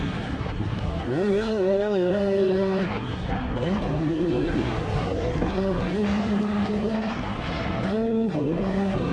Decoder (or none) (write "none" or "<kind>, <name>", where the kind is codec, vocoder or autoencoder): codec, SNAC